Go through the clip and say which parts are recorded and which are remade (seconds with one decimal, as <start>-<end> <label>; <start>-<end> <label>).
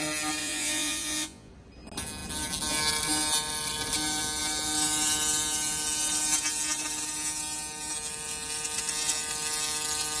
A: 0.0-0.4 recorded; 0.4-1.5 remade; 1.5-10.2 recorded